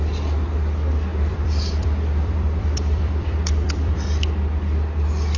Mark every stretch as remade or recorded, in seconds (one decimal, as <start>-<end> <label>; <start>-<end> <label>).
0.0-1.1 recorded; 1.1-4.3 remade; 4.3-5.4 recorded